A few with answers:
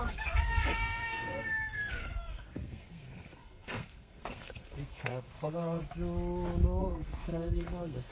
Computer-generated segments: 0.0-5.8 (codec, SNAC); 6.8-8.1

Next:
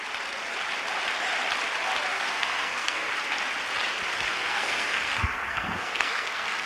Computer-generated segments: 2.1-3.1 (codec, SNAC); 4.1-6.7

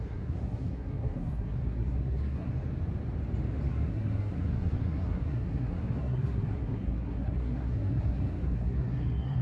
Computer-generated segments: 0.0-2.5 (codec, SNAC); 3.7-9.4

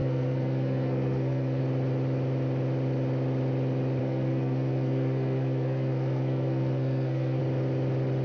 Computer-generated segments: 0.0-1.6 (codec, SNAC); 4.0-7.4

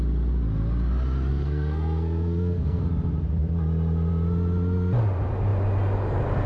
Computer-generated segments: 1.3-2.8 (codec, SNAC)

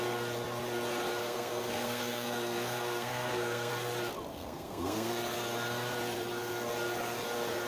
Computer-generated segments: 1.2-3.7 (codec, SNAC); 4.3-5.1

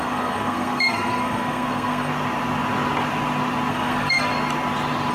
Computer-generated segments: 0.0-2.1 (codec, SNAC); 3.7-4.3

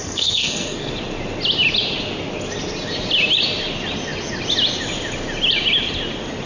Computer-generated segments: 0.0-0.9 (codec, SNAC)